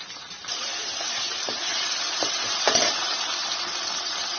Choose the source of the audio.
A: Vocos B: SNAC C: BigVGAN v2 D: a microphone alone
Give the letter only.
C